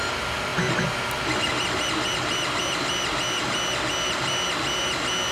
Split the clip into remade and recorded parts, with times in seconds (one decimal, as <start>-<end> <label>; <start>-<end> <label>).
0.0-5.3 recorded